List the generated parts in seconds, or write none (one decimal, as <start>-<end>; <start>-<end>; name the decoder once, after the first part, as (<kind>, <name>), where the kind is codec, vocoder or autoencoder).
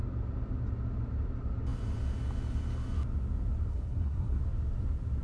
3.7-4.4 (codec, SNAC)